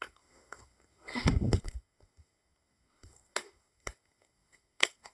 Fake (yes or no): yes